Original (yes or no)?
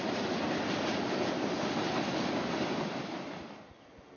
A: yes